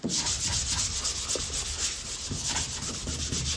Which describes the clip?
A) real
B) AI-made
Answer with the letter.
A